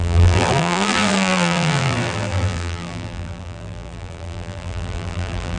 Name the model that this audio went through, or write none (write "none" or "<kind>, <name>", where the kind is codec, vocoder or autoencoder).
vocoder, BigVGAN v2